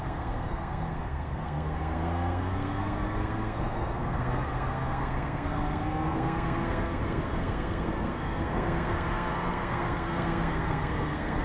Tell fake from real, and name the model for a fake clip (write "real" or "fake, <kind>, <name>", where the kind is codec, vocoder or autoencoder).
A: fake, codec, SNAC